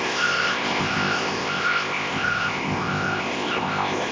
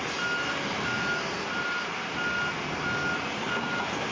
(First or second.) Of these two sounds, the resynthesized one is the first